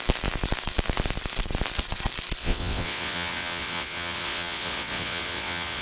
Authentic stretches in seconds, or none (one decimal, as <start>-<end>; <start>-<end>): 0.0-2.4